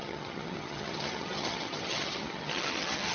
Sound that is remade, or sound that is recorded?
remade